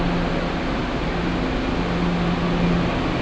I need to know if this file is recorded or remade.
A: recorded